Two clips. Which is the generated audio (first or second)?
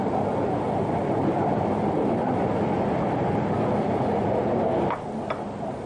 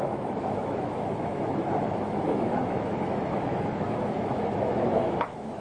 second